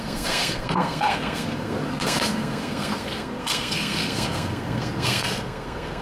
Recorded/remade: remade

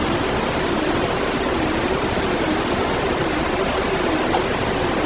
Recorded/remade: recorded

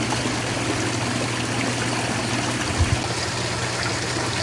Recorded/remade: recorded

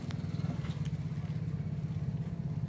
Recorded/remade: recorded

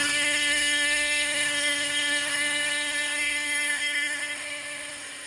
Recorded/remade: remade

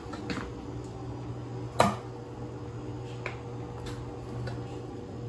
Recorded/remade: recorded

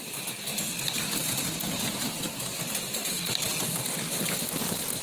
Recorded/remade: recorded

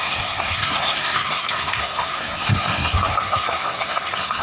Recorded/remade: remade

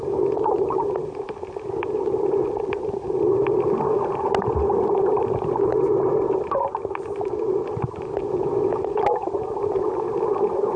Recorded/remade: recorded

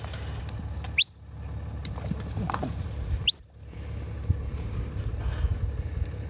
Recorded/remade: recorded